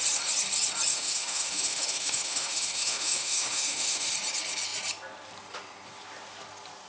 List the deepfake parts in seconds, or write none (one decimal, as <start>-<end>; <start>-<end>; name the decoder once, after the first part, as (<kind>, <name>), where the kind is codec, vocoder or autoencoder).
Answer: 0.9-4.1 (autoencoder, DAC-VAE)